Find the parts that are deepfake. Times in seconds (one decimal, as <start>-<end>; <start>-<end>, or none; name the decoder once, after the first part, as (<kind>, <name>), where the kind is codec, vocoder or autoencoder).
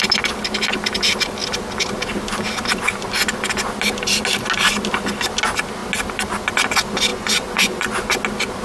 7.1-7.9 (vocoder, Vocos)